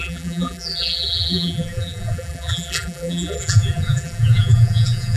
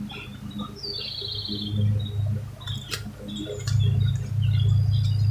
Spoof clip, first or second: first